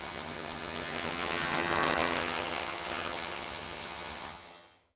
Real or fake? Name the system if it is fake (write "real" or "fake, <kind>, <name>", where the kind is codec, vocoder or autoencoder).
fake, vocoder, HiFi-GAN